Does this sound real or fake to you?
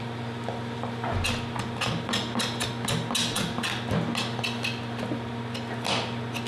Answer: real